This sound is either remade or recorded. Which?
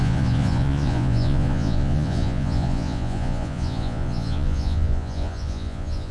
remade